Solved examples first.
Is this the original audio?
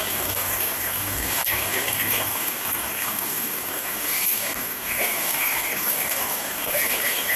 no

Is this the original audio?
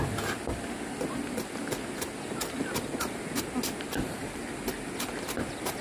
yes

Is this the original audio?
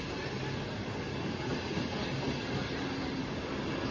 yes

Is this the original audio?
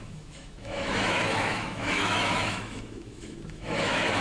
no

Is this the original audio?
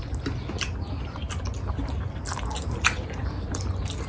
yes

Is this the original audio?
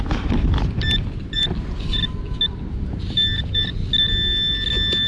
yes